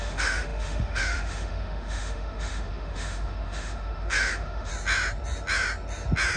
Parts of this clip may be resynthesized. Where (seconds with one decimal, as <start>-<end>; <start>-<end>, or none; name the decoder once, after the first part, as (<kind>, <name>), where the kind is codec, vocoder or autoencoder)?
0.0-4.7 (autoencoder, DAC-VAE)

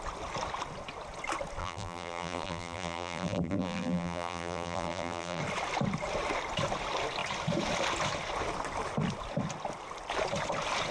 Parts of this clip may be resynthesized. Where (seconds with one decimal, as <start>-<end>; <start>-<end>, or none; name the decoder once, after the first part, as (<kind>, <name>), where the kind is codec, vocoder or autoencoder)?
1.6-5.4 (vocoder, BigVGAN v2)

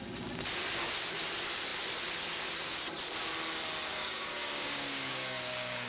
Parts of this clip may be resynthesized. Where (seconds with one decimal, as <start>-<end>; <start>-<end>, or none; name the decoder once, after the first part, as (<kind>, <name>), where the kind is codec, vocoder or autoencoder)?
3.9-5.9 (codec, DAC)

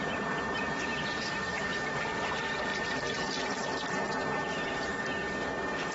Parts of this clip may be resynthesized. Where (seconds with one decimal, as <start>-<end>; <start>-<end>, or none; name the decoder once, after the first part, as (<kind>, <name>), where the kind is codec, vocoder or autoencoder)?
none

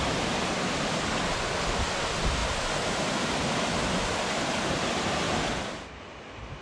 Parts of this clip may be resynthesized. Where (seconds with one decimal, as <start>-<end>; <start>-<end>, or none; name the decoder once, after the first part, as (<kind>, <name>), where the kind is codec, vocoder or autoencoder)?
none

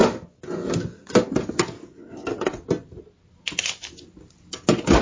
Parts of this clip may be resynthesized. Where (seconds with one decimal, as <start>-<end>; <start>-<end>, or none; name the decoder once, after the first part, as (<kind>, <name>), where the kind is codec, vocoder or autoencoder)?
none

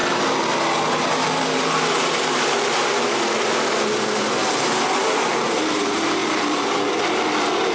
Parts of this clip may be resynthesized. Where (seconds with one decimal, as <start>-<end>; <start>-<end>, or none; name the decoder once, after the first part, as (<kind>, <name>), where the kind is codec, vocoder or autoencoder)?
1.1-4.4 (vocoder, BigVGAN v2); 5.0-7.7

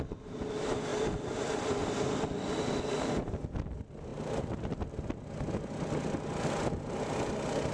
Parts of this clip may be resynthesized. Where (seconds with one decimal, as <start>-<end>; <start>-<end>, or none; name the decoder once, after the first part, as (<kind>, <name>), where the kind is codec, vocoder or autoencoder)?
4.1-4.7 (vocoder, BigVGAN v2)